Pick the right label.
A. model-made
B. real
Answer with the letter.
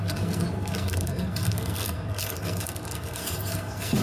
A